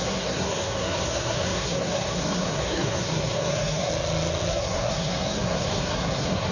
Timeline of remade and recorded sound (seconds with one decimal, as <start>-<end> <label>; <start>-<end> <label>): 0.0-3.9 remade; 3.9-4.5 recorded; 4.5-6.5 remade